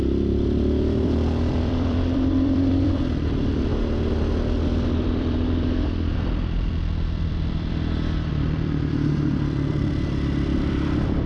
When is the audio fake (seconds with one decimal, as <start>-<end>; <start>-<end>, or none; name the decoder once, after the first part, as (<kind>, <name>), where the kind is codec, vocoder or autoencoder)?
0.0-3.7 (vocoder, BigVGAN v2); 4.2-11.3